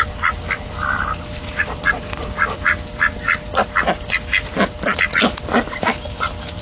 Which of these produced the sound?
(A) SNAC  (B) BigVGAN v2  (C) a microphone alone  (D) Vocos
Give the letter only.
C